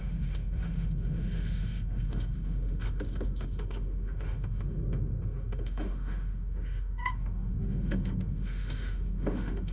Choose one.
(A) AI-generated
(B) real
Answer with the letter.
A